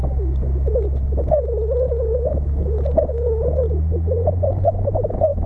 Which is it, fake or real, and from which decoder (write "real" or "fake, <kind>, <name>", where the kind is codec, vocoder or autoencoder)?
real